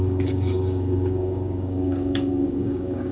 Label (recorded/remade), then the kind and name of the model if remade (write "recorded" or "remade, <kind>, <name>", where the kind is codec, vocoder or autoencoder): remade, codec, DAC